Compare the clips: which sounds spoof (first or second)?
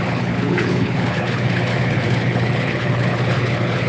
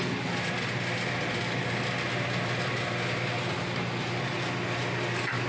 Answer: first